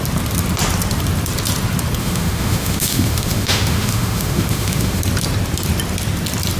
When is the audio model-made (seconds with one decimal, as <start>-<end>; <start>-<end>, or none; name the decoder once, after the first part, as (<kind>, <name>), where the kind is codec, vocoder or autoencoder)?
2.0-5.0 (autoencoder, DAC-VAE)